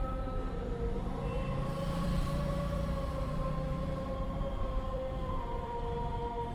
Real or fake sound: fake